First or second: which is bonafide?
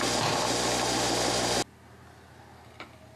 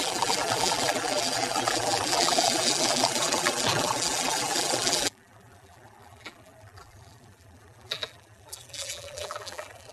first